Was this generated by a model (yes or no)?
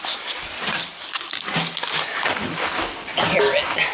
no